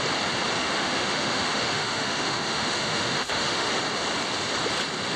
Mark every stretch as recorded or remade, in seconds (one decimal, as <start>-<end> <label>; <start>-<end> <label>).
0.0-0.6 recorded; 0.6-3.7 remade; 3.7-5.2 recorded